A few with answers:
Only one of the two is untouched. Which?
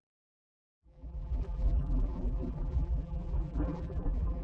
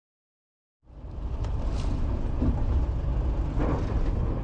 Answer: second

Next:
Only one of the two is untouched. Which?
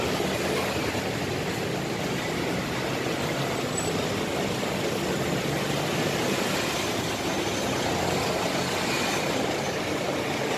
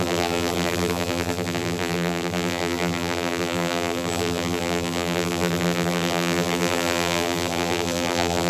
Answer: first